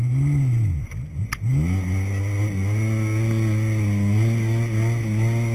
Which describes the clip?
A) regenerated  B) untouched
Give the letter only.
B